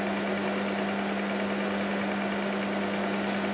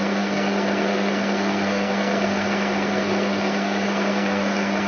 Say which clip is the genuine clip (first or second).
first